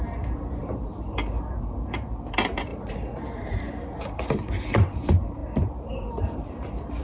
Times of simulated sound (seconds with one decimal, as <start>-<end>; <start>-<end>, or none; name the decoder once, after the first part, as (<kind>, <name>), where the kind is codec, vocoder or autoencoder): 0.0-7.0 (vocoder, BigVGAN v2)